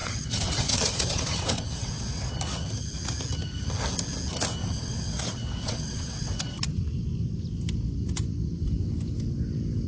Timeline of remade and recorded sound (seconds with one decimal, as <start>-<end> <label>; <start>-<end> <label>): 0.0-2.3 remade; 2.3-4.6 recorded; 4.6-6.4 remade; 6.4-9.9 recorded